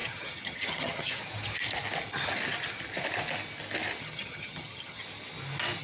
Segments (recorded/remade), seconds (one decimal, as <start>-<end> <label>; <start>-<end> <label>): 0.0-1.2 remade; 1.2-4.0 recorded; 4.0-5.0 remade; 5.0-5.8 recorded